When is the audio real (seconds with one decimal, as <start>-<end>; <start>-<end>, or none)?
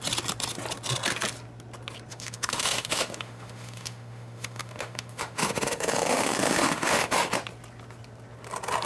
0.0-2.1; 7.3-8.9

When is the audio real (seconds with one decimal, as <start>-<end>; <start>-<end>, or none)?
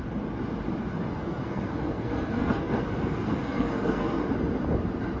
0.0-1.1; 4.2-5.2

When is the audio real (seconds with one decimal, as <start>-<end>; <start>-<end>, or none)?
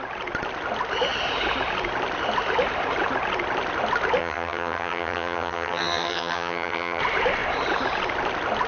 0.0-4.2; 7.0-8.7